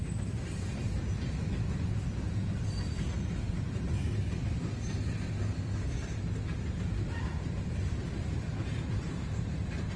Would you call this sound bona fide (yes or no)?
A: yes